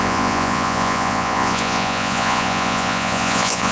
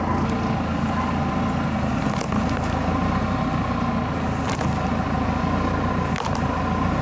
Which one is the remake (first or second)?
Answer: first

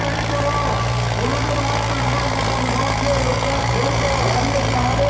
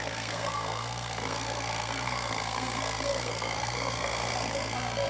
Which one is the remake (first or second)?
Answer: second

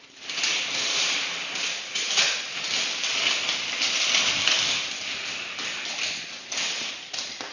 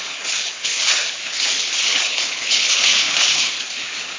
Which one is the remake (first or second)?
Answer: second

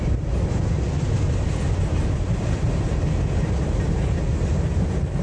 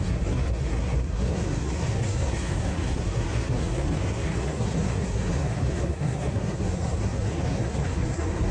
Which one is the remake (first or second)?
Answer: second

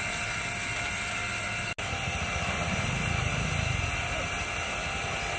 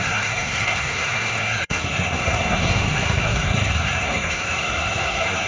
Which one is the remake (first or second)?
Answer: second